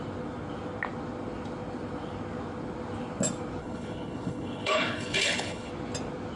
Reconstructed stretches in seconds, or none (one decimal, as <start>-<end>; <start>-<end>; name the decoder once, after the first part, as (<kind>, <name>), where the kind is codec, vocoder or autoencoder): 3.6-5.7 (codec, HILCodec)